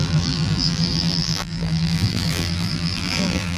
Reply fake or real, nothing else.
fake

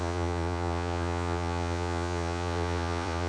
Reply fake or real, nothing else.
fake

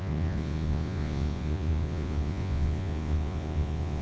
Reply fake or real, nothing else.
fake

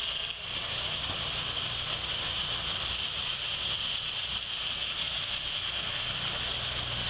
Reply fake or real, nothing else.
real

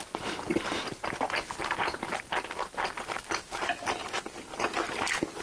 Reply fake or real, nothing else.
fake